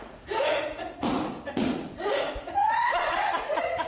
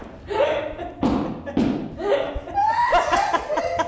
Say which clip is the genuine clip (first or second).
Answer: second